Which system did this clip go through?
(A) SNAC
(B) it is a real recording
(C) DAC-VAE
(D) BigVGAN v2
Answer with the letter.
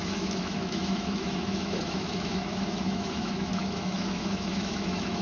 C